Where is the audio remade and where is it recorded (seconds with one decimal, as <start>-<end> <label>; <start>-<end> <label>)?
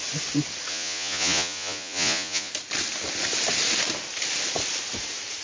0.0-0.7 recorded; 0.7-2.5 remade; 2.5-5.4 recorded